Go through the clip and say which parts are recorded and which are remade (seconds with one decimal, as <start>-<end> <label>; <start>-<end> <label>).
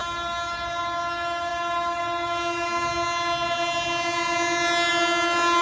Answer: 0.0-5.6 recorded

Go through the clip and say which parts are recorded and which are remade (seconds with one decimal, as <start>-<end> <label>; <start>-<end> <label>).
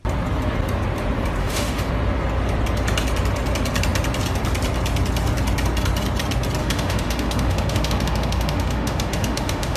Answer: 0.0-1.4 recorded; 1.4-1.9 remade; 1.9-6.6 recorded; 6.6-9.8 remade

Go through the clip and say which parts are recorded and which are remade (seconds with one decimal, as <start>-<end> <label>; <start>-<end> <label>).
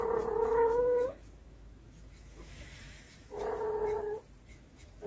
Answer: 0.0-0.4 recorded; 0.4-3.4 remade; 3.4-4.5 recorded; 4.5-5.1 remade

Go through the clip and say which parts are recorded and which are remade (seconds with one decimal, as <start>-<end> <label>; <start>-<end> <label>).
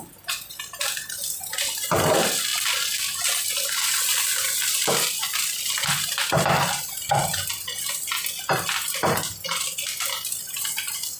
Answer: 0.0-11.2 recorded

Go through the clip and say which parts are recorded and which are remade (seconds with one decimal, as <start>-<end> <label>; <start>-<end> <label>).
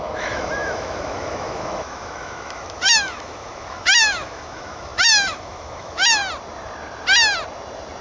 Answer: 0.0-6.2 remade; 6.2-8.0 recorded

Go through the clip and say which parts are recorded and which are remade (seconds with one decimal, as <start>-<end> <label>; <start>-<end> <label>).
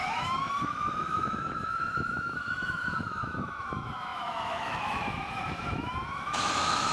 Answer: 0.0-6.9 remade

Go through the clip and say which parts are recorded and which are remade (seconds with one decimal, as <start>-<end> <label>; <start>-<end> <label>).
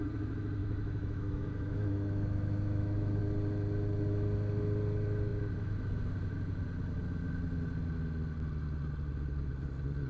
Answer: 0.0-0.6 recorded; 0.6-3.2 remade; 3.2-10.1 recorded